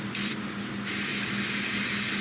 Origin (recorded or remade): recorded